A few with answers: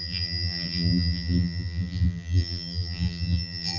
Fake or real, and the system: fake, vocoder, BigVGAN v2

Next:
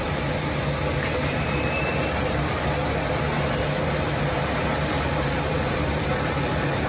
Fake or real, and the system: fake, vocoder, BigVGAN v2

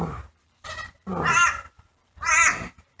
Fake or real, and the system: fake, vocoder, BigVGAN v2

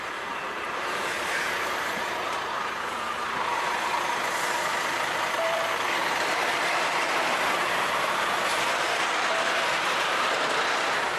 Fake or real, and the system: fake, vocoder, BigVGAN v2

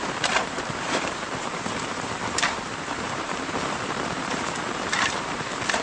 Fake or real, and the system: fake, vocoder, BigVGAN v2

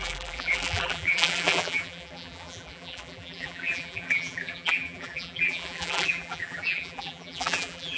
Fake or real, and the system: fake, vocoder, BigVGAN v2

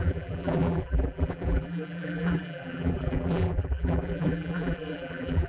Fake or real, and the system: fake, vocoder, BigVGAN v2